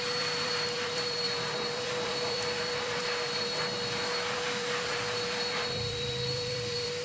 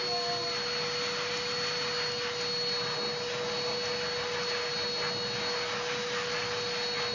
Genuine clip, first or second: second